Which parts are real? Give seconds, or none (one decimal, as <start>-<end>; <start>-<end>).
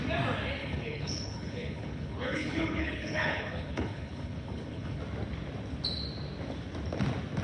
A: 0.0-0.6; 5.0-7.4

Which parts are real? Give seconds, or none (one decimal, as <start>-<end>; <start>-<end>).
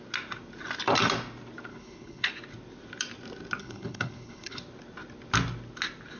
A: 0.0-1.7; 2.3-3.6; 4.6-6.2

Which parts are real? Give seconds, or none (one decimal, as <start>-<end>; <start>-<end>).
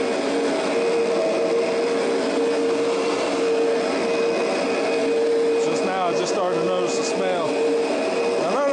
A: 0.0-8.7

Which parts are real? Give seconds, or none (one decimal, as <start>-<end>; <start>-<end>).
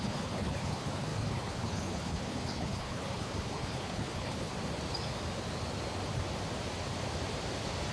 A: 4.5-7.9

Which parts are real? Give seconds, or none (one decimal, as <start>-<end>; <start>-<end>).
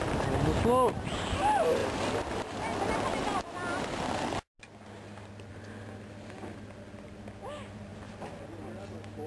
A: 0.0-9.3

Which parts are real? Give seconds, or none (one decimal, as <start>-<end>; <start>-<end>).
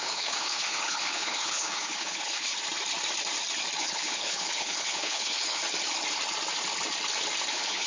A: 2.5-3.8; 5.6-7.5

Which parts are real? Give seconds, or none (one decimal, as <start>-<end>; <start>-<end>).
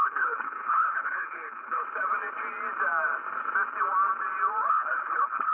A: 1.8-4.7